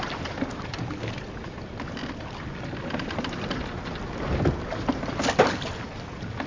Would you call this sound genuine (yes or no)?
yes